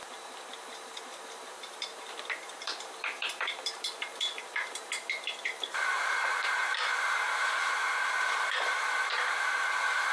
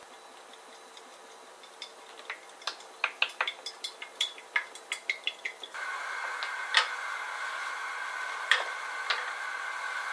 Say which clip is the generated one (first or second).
first